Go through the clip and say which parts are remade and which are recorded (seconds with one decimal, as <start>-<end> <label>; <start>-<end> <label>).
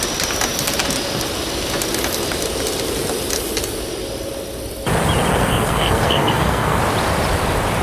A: 0.0-5.3 recorded; 5.3-6.8 remade; 6.8-7.8 recorded